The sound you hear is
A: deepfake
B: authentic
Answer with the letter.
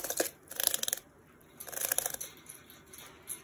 B